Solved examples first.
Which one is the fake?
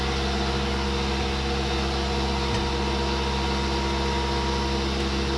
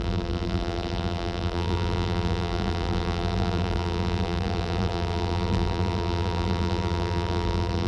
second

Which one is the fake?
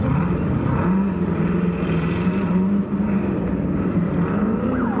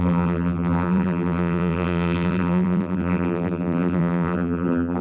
second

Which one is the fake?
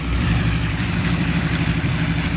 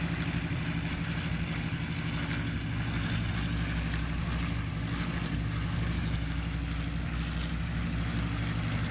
first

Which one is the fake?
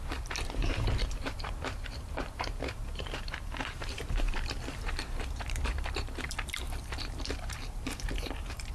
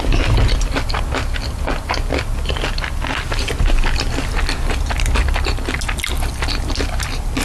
first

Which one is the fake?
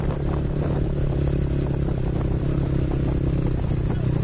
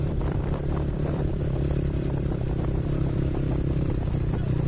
second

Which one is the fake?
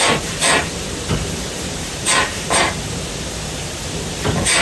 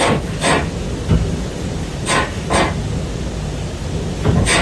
first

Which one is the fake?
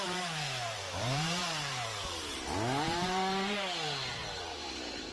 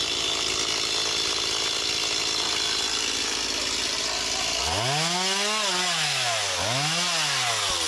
first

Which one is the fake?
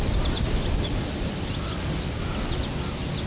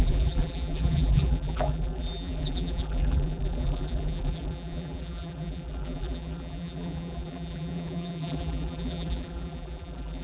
second